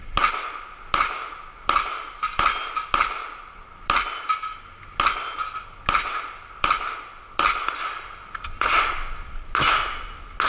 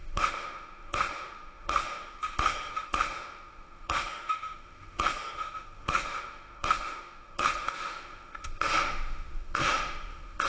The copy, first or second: second